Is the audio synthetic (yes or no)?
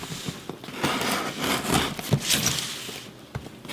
no